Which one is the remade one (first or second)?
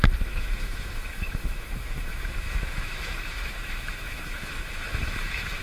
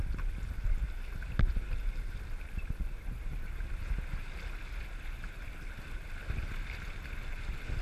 first